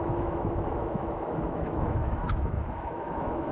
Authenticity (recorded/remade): remade